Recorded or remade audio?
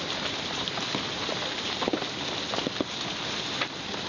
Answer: recorded